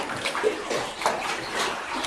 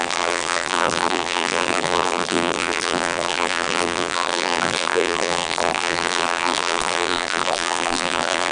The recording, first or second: first